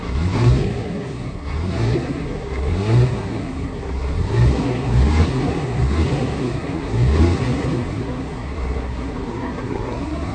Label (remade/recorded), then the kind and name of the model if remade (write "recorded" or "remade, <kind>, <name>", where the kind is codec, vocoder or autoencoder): remade, codec, SNAC